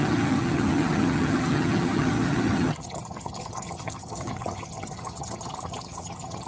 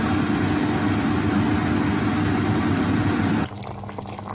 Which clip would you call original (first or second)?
second